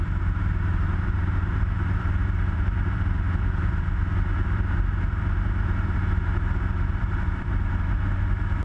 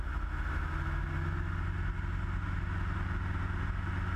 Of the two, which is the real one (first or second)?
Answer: second